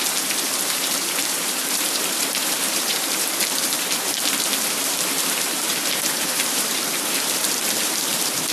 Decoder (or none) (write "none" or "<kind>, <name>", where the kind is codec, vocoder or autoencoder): vocoder, BigVGAN v2